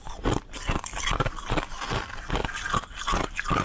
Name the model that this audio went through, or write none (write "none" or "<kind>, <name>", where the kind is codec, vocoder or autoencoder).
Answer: none